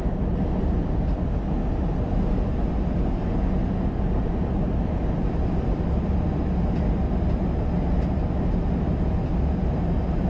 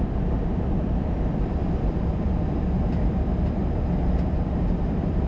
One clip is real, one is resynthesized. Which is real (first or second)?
first